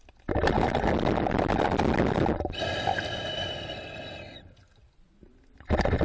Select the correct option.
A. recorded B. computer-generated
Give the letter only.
A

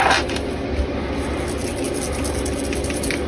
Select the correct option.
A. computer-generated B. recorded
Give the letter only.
B